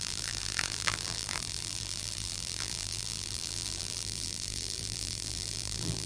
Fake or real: fake